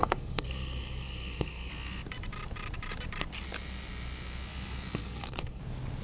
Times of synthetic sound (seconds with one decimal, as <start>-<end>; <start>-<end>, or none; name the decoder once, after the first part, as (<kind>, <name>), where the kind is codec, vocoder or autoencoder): 0.0-1.7 (codec, SNAC); 5.0-5.6